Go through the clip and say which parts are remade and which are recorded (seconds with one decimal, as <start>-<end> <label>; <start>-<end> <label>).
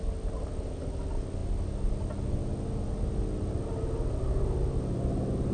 0.0-5.5 recorded